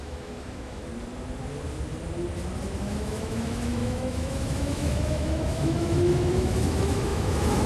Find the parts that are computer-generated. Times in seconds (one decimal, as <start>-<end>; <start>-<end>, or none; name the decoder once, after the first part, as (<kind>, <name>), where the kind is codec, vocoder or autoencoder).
0.0-0.9 (autoencoder, DAC-VAE); 2.8-7.7